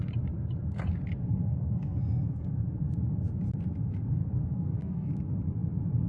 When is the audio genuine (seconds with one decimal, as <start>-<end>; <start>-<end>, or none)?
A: 0.0-1.4; 2.6-4.2; 5.1-6.1